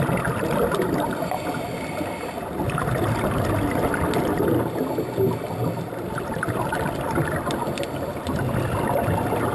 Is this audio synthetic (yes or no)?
no